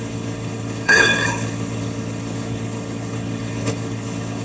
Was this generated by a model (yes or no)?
yes